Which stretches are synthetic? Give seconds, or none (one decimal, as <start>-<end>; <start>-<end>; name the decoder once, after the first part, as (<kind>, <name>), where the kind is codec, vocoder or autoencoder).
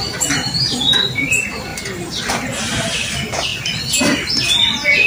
none